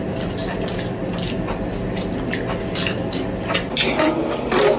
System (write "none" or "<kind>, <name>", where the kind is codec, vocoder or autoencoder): none